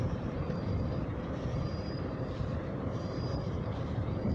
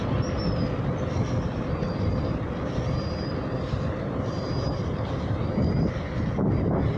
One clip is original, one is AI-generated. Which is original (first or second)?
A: second